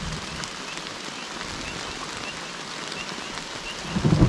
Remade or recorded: recorded